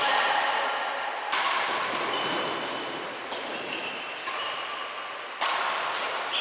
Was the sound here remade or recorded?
recorded